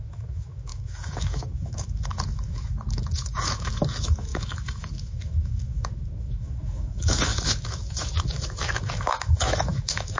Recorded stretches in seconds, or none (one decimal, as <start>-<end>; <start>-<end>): none